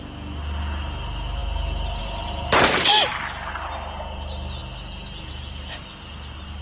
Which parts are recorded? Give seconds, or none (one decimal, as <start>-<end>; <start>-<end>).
0.0-6.6